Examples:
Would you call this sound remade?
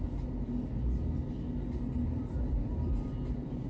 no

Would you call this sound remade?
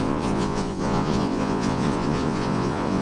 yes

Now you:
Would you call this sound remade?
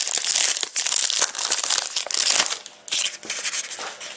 no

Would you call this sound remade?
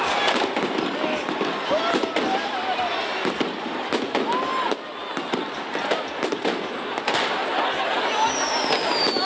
no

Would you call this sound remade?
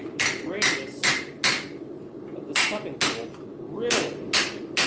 no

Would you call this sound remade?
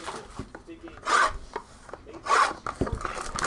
no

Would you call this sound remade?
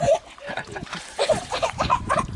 yes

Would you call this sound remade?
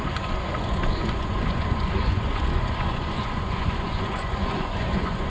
yes